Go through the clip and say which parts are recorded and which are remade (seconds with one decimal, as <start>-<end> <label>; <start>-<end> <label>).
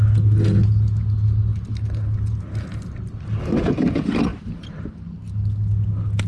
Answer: 0.0-6.3 recorded